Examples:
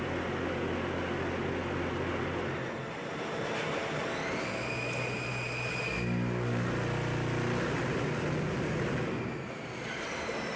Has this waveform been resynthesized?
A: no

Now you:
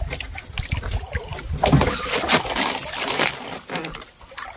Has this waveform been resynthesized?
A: no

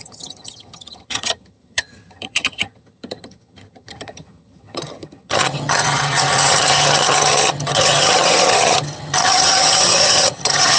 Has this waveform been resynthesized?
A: yes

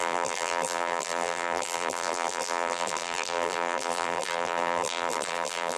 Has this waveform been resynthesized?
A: yes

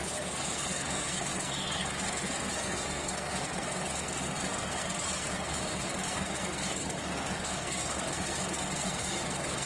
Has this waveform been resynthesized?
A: yes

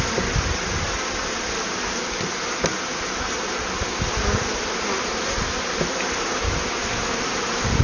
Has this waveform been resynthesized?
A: no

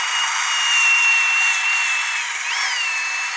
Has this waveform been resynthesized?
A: no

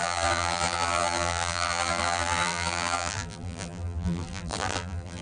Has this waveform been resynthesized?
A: yes